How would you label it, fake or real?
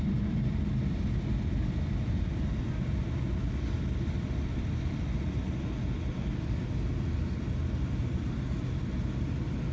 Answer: real